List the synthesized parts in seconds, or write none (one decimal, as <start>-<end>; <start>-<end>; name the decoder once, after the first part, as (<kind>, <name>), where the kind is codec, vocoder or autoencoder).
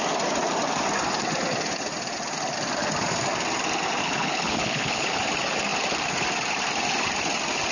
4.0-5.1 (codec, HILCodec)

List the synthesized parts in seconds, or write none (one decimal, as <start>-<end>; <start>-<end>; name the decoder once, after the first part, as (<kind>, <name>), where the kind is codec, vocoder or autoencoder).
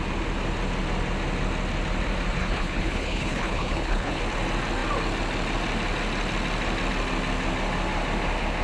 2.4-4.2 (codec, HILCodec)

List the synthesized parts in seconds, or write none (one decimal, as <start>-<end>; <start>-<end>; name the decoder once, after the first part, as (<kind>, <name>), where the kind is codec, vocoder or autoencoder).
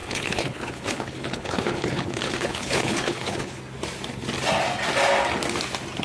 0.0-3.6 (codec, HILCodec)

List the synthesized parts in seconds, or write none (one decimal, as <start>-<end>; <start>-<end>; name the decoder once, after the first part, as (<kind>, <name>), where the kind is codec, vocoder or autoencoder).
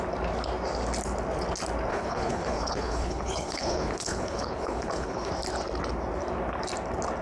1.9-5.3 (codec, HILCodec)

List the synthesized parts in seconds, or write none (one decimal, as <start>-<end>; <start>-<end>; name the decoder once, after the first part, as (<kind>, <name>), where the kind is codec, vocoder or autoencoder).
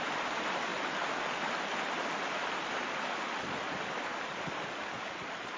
none